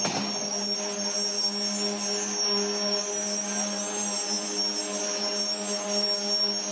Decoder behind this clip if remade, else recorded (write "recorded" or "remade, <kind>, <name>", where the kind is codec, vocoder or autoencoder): recorded